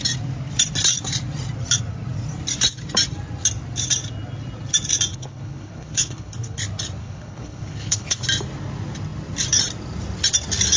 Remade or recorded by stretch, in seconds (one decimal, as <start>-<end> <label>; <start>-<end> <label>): 0.0-5.1 recorded; 5.1-6.6 remade; 6.6-7.0 recorded; 7.0-8.2 remade; 8.2-10.8 recorded

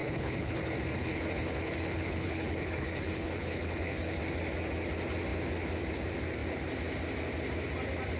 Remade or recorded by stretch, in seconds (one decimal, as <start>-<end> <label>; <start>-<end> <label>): 0.0-0.6 remade; 0.6-1.0 recorded; 1.0-4.2 remade; 4.2-8.2 recorded

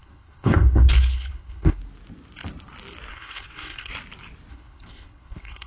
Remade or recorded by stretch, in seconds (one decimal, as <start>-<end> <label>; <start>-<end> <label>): 0.0-1.8 remade; 1.8-3.1 recorded; 3.1-3.9 remade; 3.9-4.5 recorded; 4.5-5.7 remade

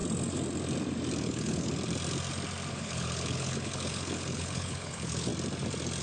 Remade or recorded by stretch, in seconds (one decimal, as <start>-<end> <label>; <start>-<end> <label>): 0.0-1.2 recorded; 1.2-1.7 remade; 1.7-2.7 recorded; 2.7-5.3 remade; 5.3-6.0 recorded

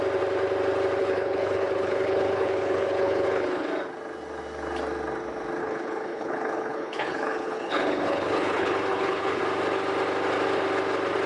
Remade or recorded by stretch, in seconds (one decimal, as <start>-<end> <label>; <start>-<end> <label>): 0.0-1.0 recorded; 1.0-3.7 remade; 3.7-5.6 recorded; 5.6-9.4 remade; 9.4-11.3 recorded

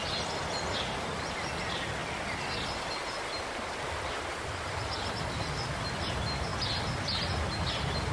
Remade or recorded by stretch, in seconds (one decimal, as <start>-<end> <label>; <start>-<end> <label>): 0.0-8.1 recorded

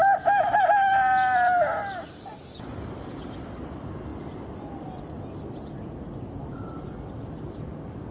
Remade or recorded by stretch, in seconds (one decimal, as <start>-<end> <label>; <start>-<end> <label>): 0.0-8.1 recorded